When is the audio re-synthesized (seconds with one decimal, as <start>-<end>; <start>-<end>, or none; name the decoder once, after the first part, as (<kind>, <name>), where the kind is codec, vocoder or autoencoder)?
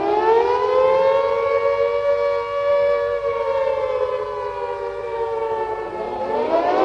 2.7-4.1 (vocoder, BigVGAN v2); 5.0-6.8